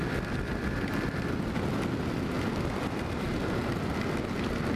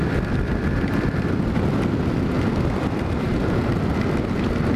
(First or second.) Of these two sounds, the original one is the first